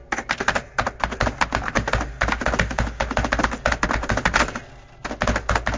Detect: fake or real real